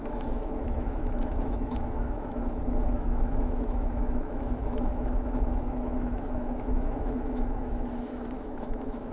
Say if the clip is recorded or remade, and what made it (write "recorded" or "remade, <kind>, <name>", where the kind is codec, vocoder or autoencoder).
remade, autoencoder, DAC-VAE